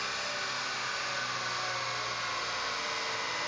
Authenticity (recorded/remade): recorded